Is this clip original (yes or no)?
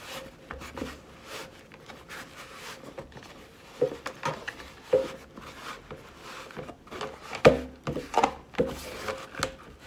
yes